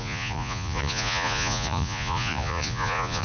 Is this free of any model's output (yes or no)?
no